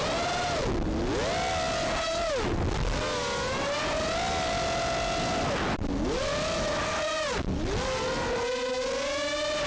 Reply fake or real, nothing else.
real